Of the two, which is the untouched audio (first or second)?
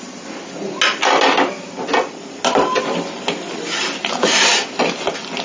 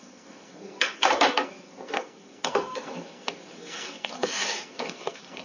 first